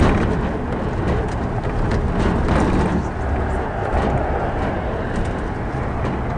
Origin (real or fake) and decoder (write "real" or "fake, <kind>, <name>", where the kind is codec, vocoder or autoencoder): real